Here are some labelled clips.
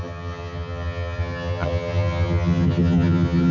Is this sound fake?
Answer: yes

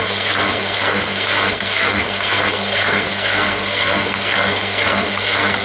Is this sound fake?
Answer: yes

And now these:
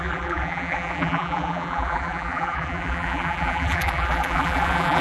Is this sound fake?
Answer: yes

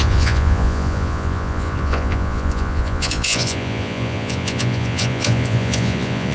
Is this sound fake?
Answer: yes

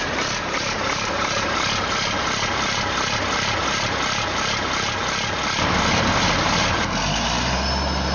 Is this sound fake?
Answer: no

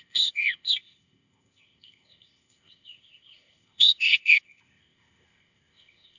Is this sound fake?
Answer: yes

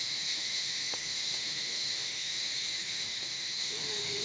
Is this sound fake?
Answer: yes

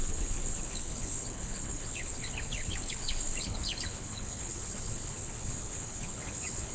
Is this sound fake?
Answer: yes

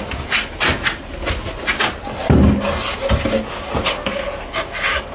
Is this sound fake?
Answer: no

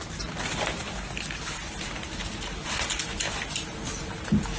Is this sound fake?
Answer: no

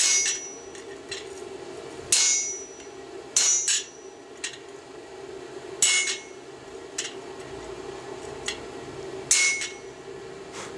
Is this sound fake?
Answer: no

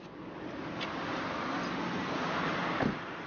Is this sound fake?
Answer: no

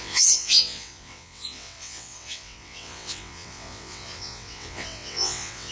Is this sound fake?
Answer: yes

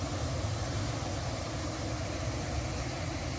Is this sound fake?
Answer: no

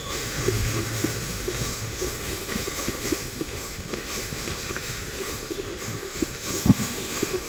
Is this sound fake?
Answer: yes